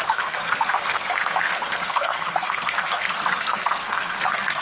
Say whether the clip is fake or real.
fake